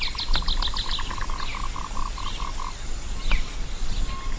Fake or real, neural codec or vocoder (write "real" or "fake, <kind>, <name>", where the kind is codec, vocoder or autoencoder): real